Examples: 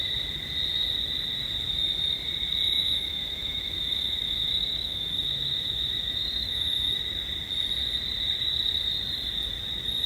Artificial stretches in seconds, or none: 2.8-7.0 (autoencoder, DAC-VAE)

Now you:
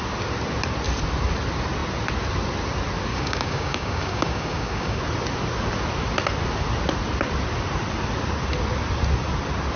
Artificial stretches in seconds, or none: 3.1-5.0 (codec, DAC)

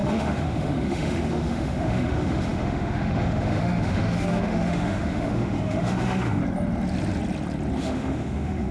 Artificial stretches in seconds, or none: 0.0-6.4 (autoencoder, DAC-VAE); 7.8-8.7